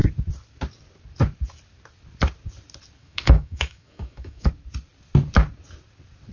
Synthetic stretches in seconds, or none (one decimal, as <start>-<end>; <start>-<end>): 3.0-4.5